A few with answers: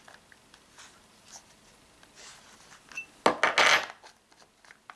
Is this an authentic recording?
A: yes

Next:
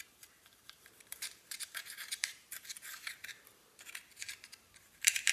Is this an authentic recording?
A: no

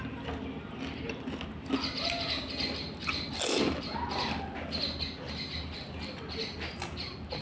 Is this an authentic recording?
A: yes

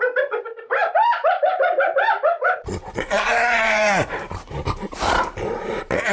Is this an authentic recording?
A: no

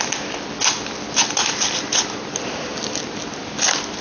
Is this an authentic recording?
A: yes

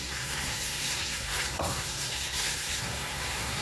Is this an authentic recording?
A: no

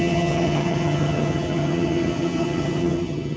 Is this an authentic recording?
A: no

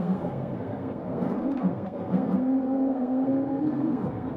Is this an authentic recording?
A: no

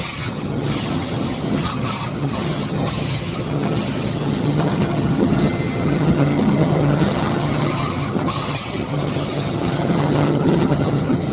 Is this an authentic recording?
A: no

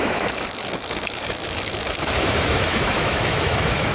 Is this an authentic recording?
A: no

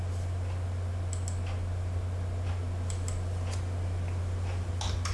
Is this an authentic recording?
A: yes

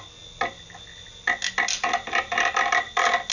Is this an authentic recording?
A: yes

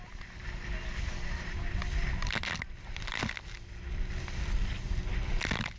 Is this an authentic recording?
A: yes